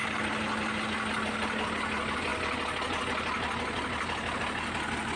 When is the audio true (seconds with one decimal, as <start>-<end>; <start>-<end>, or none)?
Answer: 0.0-5.2